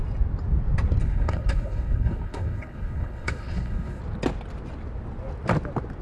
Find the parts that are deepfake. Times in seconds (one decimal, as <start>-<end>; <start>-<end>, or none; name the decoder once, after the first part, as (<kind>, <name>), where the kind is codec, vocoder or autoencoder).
1.0-4.0 (codec, HILCodec)